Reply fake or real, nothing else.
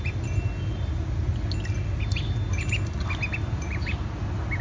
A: real